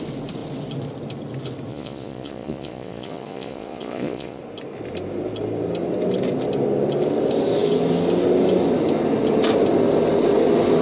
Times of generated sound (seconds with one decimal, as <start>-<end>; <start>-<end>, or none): 1.7-4.4